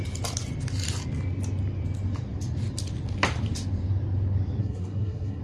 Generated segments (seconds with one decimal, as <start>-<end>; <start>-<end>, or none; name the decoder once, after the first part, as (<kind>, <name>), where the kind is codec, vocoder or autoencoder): 4.6-5.4 (codec, SNAC)